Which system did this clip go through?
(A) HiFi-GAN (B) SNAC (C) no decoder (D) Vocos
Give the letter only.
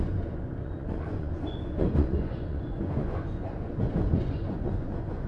D